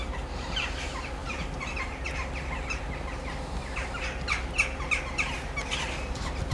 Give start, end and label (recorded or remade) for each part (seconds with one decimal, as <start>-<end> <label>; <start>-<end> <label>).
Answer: 0.0-6.5 recorded